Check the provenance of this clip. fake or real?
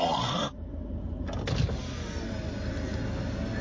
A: real